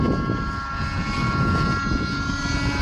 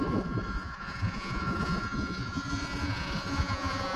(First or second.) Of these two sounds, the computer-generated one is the second